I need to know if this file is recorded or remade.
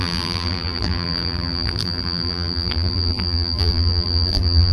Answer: remade